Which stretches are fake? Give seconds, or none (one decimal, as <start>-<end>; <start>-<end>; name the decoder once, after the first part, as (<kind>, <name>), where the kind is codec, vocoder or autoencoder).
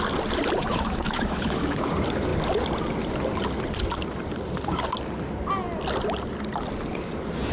0.6-1.9 (autoencoder, DAC-VAE)